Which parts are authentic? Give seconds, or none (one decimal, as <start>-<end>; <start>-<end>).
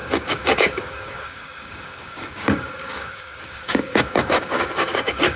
none